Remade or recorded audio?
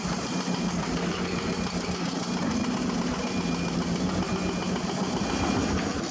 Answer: recorded